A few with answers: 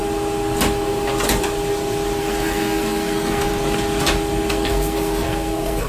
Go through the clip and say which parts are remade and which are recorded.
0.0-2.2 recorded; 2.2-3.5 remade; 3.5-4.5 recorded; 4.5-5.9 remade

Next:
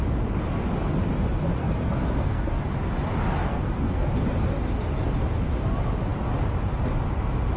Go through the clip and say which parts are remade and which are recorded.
0.0-1.6 recorded; 1.6-2.6 remade; 2.6-3.5 recorded; 3.5-4.1 remade; 4.1-7.6 recorded